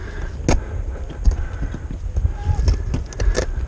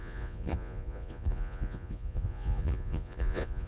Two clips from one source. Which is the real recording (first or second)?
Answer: first